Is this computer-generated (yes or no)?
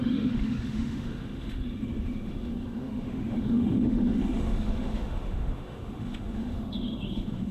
yes